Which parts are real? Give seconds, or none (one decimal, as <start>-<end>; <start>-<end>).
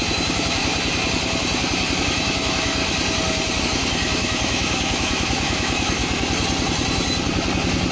0.7-2.0; 2.8-3.6; 6.0-7.9